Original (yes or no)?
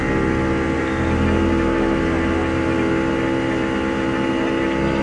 yes